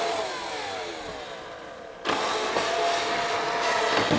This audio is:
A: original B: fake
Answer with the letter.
A